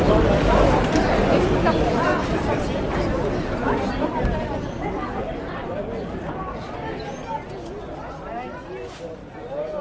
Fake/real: real